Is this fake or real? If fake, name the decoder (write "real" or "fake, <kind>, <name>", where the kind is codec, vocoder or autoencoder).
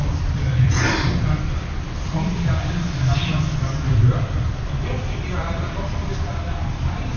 fake, vocoder, BigVGAN v2